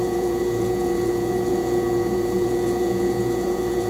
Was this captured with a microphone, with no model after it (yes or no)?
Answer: no